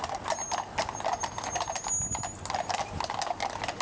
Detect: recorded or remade recorded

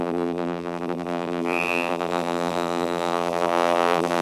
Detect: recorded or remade remade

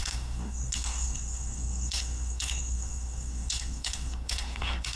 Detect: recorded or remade remade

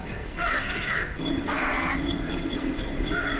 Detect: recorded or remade remade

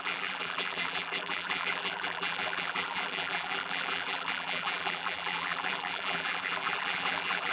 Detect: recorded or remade remade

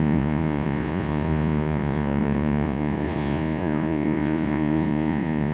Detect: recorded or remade remade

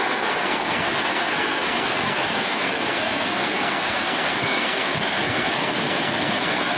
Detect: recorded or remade remade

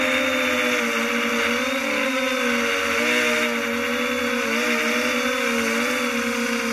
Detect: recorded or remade recorded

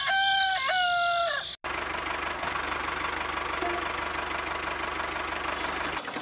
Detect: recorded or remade recorded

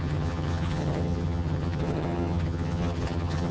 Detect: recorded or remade remade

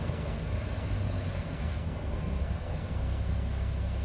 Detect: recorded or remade remade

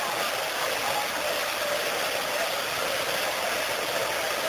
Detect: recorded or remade recorded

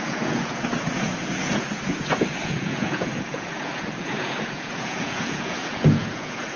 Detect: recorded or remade remade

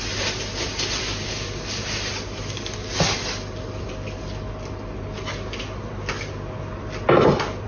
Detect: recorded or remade recorded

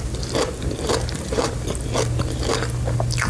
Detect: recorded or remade recorded